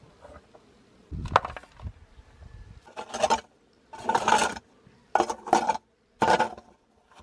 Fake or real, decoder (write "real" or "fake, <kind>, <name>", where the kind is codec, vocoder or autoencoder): real